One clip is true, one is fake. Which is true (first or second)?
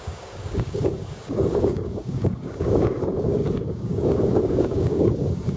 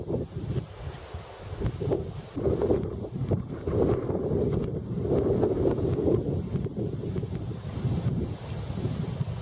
second